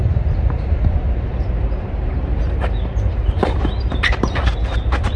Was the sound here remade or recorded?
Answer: remade